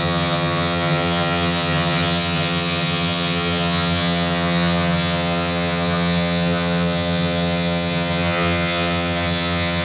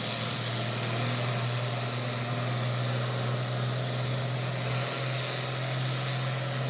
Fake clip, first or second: first